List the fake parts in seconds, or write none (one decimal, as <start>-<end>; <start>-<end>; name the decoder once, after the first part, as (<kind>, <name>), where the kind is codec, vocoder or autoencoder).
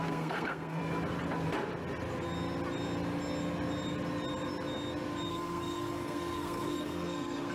0.0-0.8 (codec, SNAC); 5.3-7.5